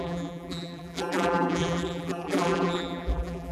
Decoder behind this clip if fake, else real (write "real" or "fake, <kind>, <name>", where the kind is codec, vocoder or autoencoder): fake, vocoder, BigVGAN v2